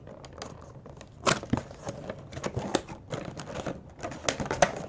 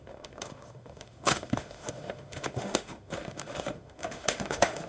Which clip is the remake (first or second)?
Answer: second